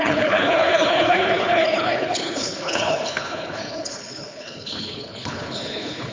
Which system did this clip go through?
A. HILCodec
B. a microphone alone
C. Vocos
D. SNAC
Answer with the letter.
A